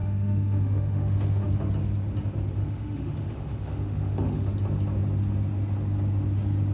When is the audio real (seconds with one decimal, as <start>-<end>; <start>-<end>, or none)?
1.5-2.6; 4.5-6.7